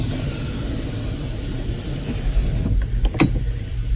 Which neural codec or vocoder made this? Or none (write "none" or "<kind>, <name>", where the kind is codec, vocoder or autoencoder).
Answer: none